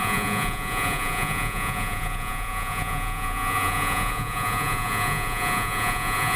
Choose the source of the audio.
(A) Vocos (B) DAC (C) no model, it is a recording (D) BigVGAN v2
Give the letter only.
A